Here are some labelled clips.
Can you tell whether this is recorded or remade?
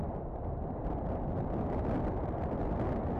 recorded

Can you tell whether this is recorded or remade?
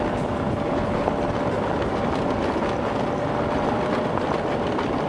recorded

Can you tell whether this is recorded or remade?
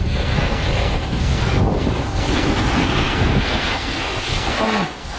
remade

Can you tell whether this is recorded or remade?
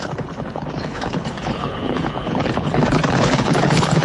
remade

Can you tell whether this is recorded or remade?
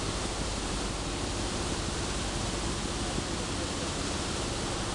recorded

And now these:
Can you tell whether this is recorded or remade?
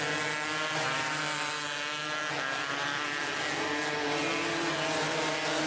recorded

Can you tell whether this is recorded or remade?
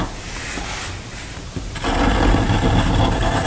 recorded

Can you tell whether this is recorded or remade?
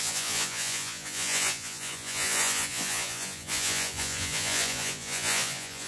remade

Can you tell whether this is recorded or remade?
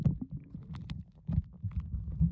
recorded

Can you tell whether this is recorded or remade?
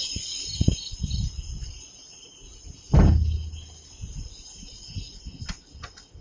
recorded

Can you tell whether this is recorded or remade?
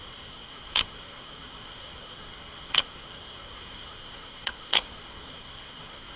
remade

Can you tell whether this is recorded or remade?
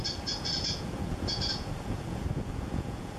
remade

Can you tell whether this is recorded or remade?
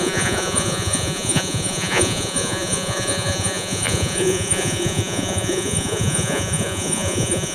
remade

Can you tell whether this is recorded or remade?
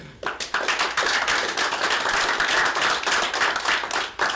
recorded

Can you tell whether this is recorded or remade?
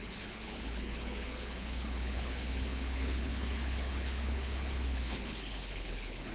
remade